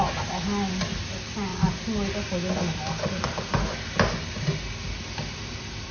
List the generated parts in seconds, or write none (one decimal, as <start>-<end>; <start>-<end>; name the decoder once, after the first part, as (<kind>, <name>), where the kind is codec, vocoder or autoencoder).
none